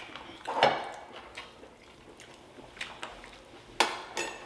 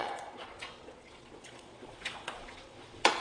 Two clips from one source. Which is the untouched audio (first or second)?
first